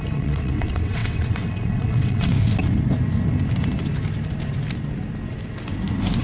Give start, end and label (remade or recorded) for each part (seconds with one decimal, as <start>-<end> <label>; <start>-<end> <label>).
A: 0.0-2.3 remade; 2.3-6.2 recorded